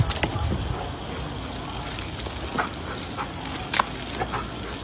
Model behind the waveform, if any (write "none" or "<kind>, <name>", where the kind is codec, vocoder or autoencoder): none